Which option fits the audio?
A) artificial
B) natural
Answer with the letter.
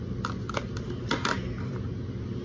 B